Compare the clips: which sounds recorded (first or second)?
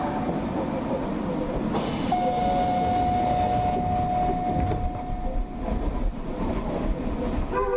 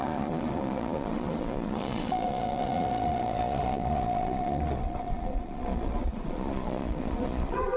first